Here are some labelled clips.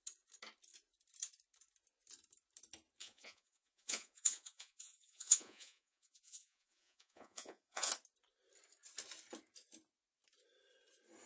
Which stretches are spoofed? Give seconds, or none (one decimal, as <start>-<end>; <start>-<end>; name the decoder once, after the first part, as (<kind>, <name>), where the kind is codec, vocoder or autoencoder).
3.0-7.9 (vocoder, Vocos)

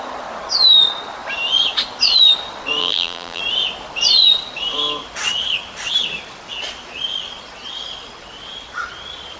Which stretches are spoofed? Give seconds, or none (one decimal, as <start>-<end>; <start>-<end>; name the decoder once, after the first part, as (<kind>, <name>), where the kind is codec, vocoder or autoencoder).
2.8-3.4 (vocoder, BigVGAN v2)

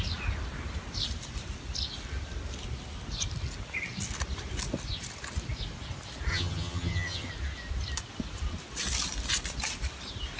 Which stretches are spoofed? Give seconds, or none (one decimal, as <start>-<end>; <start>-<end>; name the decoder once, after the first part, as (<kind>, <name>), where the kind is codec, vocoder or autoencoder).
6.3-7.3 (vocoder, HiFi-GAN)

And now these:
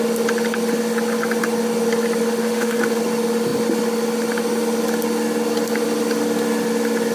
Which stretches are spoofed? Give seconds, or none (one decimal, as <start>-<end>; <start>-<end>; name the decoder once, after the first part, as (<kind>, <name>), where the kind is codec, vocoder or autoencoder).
2.4-3.0 (autoencoder, DAC-VAE)

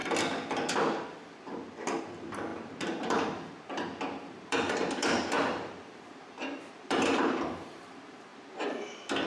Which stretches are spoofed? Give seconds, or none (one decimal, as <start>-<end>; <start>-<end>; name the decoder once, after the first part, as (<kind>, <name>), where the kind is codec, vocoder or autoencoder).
2.0-8.3 (vocoder, BigVGAN v2)

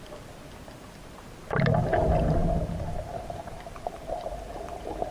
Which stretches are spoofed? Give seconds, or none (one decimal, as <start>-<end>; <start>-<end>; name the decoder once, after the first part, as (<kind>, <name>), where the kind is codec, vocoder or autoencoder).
2.4-5.1 (vocoder, BigVGAN v2)

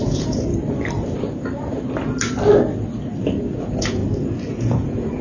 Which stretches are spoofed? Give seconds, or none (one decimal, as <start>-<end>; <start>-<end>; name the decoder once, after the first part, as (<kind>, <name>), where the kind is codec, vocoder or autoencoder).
0.0-0.5 (vocoder, Vocos); 3.6-4.0; 4.5-5.2

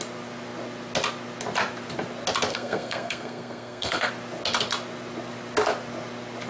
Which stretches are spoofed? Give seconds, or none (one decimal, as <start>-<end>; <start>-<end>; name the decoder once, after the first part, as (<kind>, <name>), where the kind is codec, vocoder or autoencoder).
2.5-4.1 (codec, SNAC)